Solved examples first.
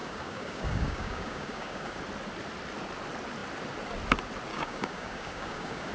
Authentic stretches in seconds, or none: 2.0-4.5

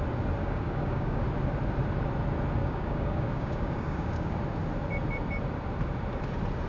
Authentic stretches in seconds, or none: 0.0-0.4; 1.2-2.6; 4.4-6.7